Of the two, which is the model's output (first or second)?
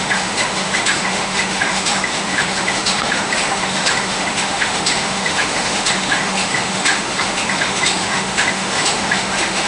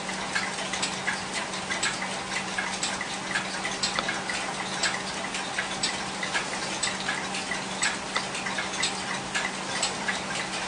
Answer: first